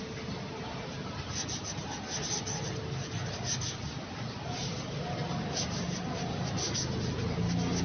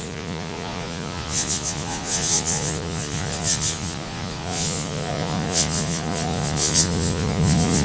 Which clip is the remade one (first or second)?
second